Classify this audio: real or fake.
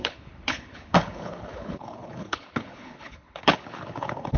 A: fake